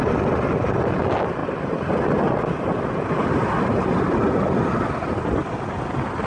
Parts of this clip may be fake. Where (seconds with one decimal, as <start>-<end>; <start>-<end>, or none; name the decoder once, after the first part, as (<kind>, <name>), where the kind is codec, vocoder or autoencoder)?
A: none